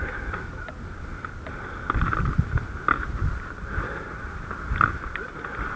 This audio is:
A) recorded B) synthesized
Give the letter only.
A